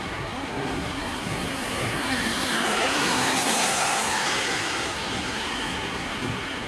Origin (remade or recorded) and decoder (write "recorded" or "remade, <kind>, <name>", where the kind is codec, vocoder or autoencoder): remade, codec, SNAC